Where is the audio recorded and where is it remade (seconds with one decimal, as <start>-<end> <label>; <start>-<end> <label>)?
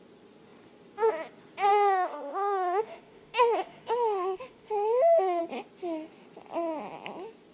0.0-1.7 recorded; 1.7-5.4 remade; 5.4-7.5 recorded